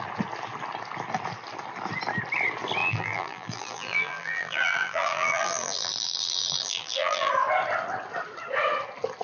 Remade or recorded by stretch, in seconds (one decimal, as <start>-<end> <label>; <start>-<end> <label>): 0.0-2.8 recorded; 2.8-7.3 remade; 7.3-9.2 recorded